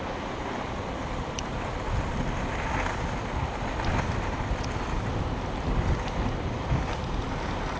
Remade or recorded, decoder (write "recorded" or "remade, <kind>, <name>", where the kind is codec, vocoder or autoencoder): recorded